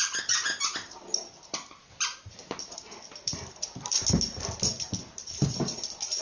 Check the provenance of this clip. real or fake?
real